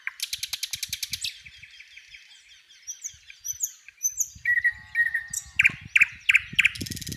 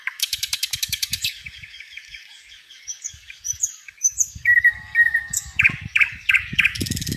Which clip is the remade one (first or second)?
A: second